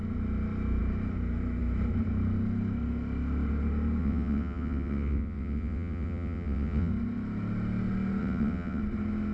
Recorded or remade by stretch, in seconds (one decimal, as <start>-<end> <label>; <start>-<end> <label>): 0.0-4.0 recorded; 4.0-6.9 remade; 6.9-8.2 recorded; 8.2-8.8 remade; 8.8-9.3 recorded